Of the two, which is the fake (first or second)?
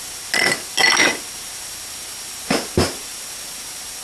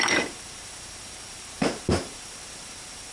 second